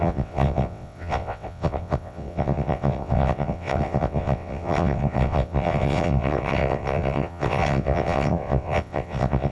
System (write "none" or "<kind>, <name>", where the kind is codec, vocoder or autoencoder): vocoder, WaveNeXt